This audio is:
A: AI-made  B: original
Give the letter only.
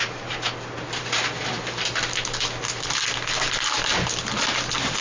B